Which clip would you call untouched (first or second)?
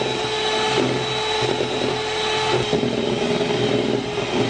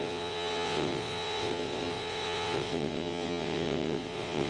first